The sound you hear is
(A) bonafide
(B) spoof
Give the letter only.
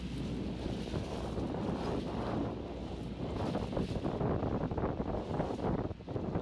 A